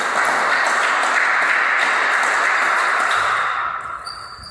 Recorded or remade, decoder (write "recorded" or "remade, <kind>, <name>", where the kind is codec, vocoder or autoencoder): recorded